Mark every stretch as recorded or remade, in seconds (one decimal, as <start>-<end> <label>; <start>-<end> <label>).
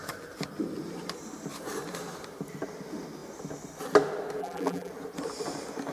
0.0-4.4 recorded; 4.4-4.9 remade; 4.9-5.9 recorded